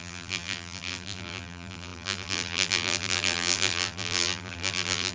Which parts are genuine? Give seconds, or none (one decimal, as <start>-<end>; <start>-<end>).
none